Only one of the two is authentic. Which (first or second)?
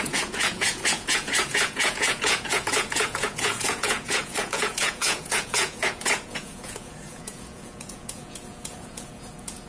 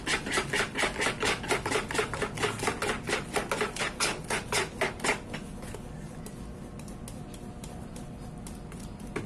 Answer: second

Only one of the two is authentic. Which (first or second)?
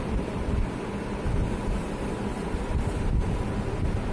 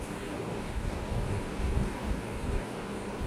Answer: first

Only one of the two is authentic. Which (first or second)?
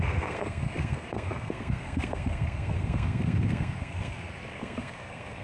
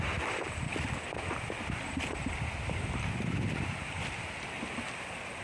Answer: second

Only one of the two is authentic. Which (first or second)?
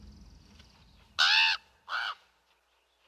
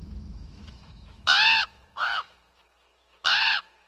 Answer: first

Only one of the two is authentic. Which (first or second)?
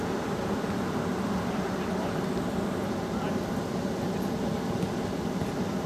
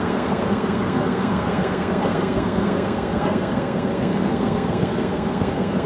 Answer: first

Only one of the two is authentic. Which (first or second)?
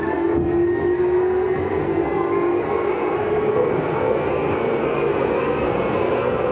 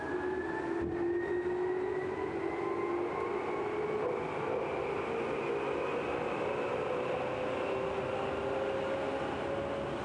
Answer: second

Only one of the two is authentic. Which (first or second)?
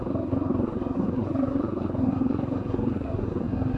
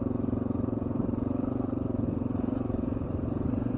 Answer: second